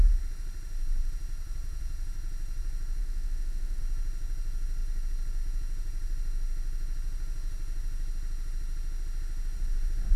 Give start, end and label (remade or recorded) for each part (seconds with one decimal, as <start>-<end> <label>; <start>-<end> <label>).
0.0-3.0 recorded; 3.0-3.8 remade; 3.8-10.2 recorded